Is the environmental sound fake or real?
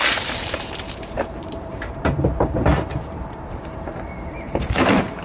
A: fake